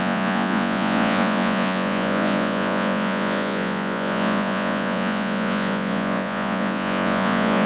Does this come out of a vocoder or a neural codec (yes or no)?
yes